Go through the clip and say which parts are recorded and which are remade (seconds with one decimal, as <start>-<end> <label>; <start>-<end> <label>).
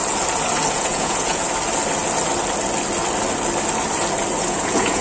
0.0-0.7 recorded; 0.7-1.4 remade; 1.4-4.4 recorded; 4.4-5.0 remade